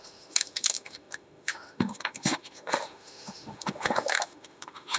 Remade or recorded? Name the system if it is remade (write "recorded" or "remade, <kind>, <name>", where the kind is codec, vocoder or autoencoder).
remade, autoencoder, DAC-VAE